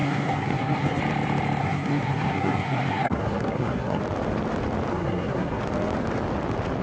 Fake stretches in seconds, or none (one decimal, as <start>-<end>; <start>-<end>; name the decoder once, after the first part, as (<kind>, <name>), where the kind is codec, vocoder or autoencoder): 0.0-1.0 (codec, SNAC); 1.6-4.0; 4.9-5.6